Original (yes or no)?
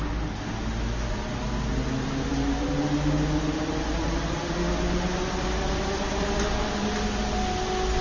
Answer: yes